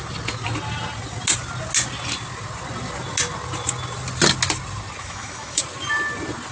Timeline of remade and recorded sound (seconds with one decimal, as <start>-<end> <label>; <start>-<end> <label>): 0.0-5.0 recorded; 5.0-5.6 remade; 5.6-6.5 recorded